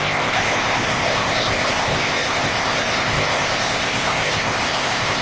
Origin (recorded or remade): remade